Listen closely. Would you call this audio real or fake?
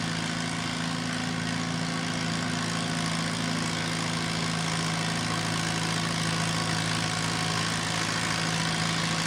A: real